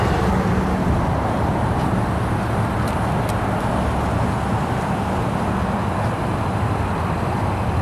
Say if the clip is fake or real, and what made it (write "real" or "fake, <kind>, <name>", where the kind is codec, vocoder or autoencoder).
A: real